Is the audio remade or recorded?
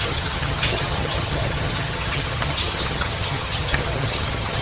remade